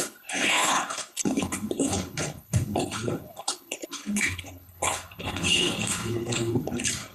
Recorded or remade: remade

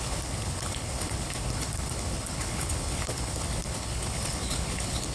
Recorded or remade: remade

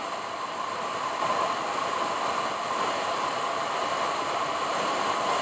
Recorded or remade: recorded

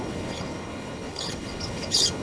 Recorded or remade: remade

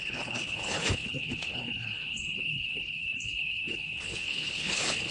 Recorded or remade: remade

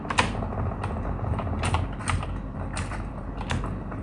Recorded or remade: recorded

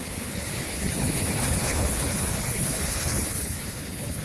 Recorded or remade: remade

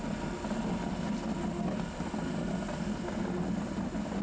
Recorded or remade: recorded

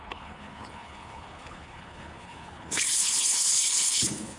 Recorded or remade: remade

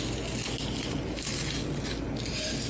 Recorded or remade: recorded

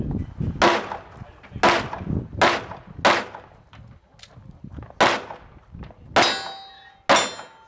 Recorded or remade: recorded